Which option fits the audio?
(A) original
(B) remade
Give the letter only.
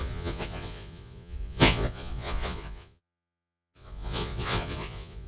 B